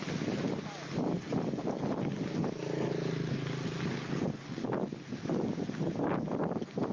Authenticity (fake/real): real